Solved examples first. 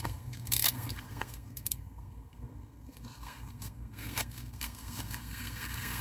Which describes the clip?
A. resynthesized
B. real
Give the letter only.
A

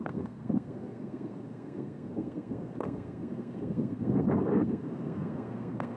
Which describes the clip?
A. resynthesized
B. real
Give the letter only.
A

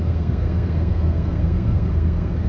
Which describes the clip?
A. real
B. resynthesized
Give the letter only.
B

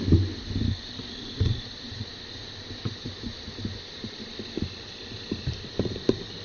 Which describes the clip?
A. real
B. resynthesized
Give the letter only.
A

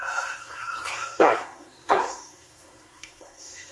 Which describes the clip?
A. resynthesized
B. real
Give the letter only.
A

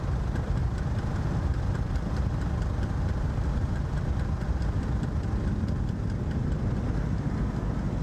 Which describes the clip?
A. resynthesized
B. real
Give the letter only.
B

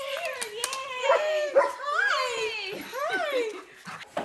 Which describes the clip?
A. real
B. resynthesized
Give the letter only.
A